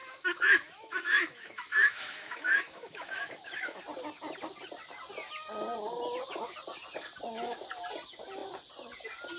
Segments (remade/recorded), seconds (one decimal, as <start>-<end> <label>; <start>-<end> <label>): 0.0-3.8 remade; 3.8-9.4 recorded